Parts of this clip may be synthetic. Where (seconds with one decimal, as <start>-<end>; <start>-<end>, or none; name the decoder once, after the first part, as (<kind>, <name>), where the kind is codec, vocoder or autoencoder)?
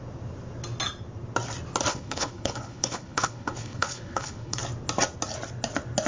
1.9-4.6 (codec, HILCodec)